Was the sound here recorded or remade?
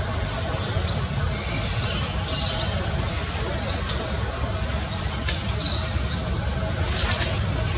recorded